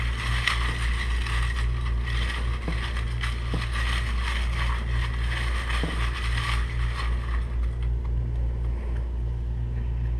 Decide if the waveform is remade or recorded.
recorded